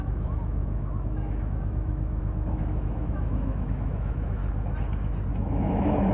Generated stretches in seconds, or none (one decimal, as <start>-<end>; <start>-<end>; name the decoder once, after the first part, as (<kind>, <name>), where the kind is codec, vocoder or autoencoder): 0.0-4.4 (autoencoder, DAC-VAE); 5.3-6.1